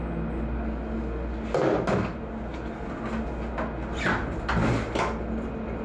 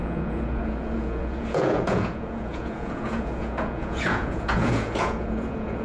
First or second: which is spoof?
second